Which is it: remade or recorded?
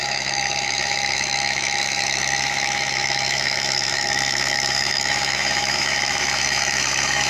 remade